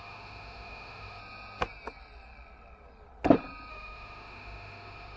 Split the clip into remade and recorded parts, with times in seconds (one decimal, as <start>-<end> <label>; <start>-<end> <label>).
0.0-1.2 remade; 1.2-3.7 recorded; 3.7-5.2 remade